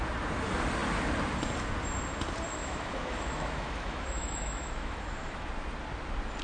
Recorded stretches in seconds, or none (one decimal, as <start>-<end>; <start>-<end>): 0.0-2.6; 5.5-6.4